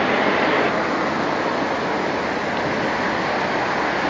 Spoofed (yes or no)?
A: no